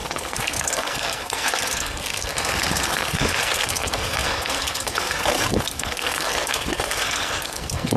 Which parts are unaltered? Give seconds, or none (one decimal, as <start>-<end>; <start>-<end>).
none